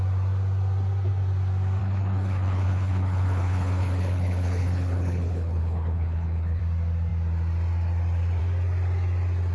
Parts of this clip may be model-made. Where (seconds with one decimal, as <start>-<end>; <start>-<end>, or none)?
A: 1.8-6.6